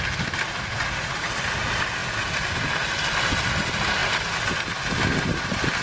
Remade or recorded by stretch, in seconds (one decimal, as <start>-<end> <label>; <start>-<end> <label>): 0.0-4.0 remade; 4.0-4.6 recorded; 4.6-5.8 remade